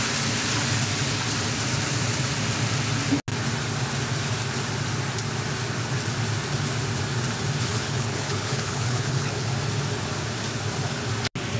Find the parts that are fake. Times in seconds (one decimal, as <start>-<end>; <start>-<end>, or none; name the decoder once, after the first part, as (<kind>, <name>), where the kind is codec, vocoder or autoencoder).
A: 7.7-9.5 (codec, HILCodec)

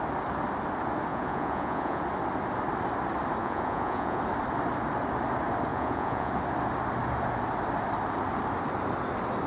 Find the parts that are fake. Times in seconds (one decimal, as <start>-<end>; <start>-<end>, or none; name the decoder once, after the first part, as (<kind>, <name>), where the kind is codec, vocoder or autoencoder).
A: 1.1-2.0 (vocoder, Vocos); 3.4-4.2; 5.7-6.3

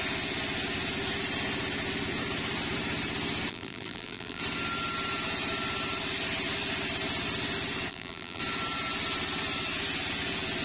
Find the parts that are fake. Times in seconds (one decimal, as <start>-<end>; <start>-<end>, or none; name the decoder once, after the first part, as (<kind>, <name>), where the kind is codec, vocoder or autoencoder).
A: 3.5-4.4 (vocoder, BigVGAN v2); 7.9-8.4

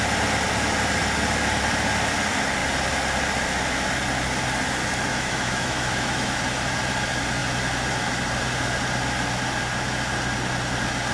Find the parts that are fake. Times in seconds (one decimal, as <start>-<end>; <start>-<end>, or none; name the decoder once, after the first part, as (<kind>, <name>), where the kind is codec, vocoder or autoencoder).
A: 5.1-6.4 (autoencoder, DAC-VAE)

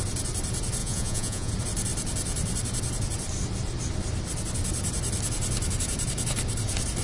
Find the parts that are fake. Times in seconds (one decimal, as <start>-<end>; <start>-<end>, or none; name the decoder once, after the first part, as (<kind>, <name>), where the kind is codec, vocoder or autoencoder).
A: 0.8-1.5 (vocoder, Vocos)

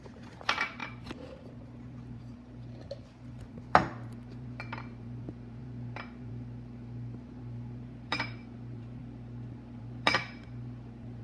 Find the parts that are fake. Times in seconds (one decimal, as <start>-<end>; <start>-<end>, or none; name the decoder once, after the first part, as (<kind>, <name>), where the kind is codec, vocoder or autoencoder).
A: 0.0-9.0 (vocoder, BigVGAN v2); 9.8-11.2

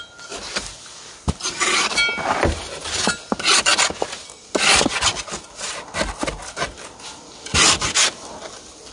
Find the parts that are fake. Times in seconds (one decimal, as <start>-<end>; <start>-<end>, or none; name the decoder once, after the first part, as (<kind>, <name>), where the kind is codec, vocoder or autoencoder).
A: none